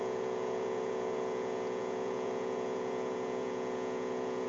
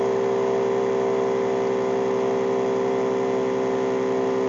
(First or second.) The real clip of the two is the second